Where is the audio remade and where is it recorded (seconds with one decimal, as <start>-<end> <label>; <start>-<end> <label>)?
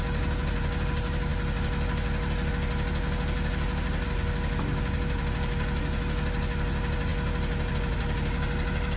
0.0-9.0 recorded